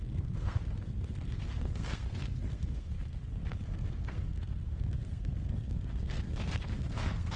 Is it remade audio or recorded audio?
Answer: remade